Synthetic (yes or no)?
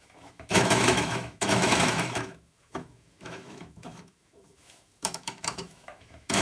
yes